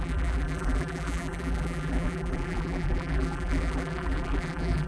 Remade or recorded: remade